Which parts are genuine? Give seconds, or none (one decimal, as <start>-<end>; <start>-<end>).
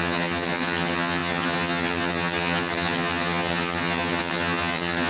none